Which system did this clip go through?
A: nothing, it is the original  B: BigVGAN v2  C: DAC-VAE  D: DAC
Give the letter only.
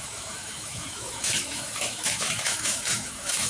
C